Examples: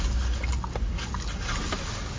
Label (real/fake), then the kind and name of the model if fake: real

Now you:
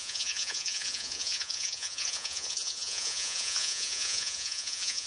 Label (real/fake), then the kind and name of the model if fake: fake, vocoder, Vocos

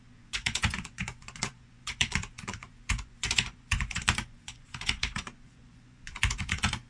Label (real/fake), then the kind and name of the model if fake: fake, vocoder, Vocos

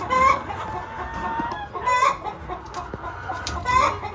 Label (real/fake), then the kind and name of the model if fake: real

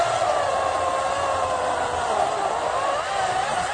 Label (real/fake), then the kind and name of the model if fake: real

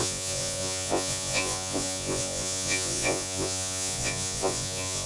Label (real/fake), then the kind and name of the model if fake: fake, vocoder, Vocos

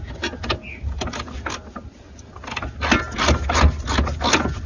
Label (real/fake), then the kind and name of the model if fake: real